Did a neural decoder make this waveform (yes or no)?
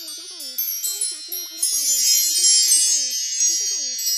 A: no